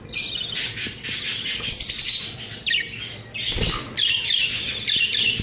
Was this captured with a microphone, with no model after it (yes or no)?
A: yes